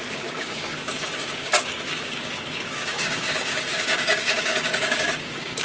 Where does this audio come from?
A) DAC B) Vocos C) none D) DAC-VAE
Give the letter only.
A